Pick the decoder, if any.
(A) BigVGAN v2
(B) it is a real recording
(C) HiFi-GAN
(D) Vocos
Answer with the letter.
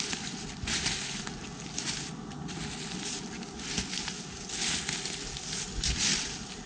B